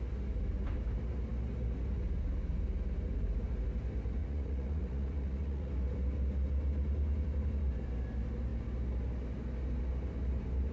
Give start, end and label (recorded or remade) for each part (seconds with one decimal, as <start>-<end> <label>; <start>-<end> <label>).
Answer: 0.0-4.2 recorded; 4.2-5.7 remade; 5.7-10.7 recorded